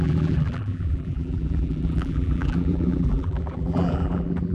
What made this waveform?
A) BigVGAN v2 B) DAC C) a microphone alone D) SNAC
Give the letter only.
A